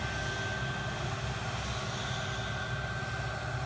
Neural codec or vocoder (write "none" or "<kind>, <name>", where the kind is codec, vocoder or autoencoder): none